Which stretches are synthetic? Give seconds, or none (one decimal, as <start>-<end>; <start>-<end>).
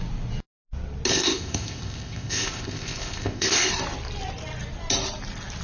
1.1-3.7